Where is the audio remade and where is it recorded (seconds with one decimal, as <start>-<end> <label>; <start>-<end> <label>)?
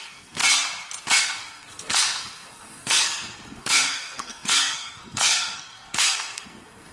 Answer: 0.0-0.4 remade; 0.4-1.2 recorded; 1.2-6.9 remade